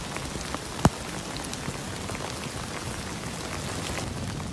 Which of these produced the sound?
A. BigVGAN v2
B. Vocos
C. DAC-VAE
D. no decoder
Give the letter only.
D